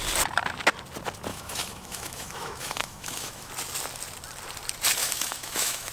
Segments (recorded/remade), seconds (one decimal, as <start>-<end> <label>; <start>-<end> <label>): 0.0-1.3 recorded; 1.3-3.5 remade; 3.5-5.0 recorded; 5.0-5.9 remade